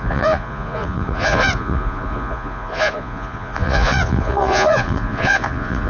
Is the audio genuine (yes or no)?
no